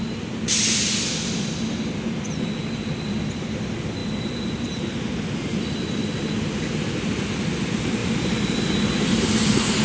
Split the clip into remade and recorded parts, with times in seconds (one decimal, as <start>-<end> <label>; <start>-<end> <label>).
0.0-9.8 recorded